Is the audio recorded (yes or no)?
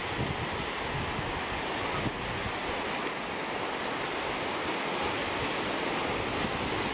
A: yes